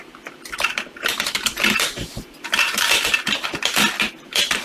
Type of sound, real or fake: fake